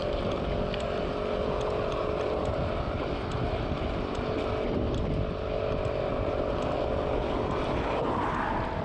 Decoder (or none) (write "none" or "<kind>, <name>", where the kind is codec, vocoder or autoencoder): none